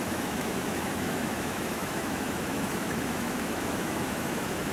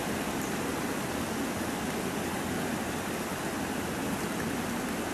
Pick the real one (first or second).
second